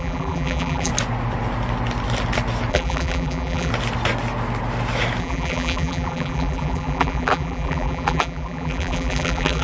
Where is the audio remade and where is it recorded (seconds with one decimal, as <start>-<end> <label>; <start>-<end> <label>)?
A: 0.0-0.9 remade; 0.9-2.7 recorded; 2.7-3.7 remade; 3.7-5.2 recorded; 5.2-9.6 remade

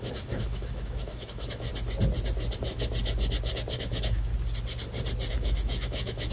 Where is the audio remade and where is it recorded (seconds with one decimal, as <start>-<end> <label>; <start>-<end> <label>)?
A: 0.0-1.7 remade; 1.7-3.8 recorded; 3.8-4.3 remade; 4.3-5.3 recorded; 5.3-6.3 remade

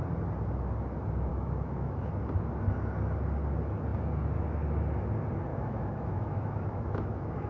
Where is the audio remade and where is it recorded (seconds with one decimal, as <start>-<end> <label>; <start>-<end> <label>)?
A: 0.0-1.3 recorded; 1.3-2.1 remade; 2.1-5.5 recorded; 5.5-7.5 remade